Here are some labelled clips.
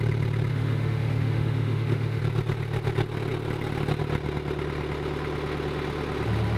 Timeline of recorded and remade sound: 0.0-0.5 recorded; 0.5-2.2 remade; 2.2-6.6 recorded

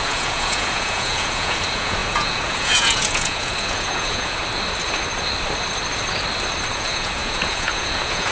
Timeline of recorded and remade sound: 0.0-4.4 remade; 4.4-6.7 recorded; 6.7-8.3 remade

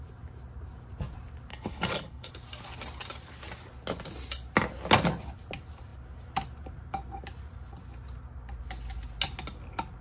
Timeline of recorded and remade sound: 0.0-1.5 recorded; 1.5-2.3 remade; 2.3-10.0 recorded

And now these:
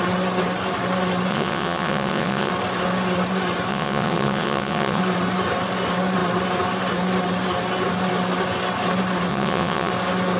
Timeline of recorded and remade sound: 0.0-1.3 recorded; 1.3-2.5 remade; 2.5-3.7 recorded; 3.7-5.0 remade; 5.0-9.3 recorded; 9.3-9.9 remade; 9.9-10.4 recorded